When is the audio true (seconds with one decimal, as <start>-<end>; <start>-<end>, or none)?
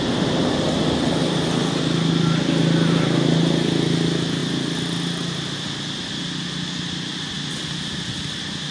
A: 0.0-8.7